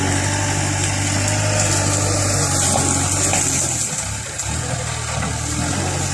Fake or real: real